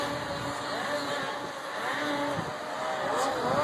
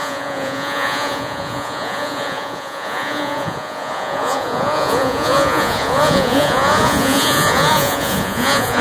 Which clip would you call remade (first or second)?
second